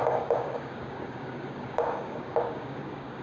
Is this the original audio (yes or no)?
no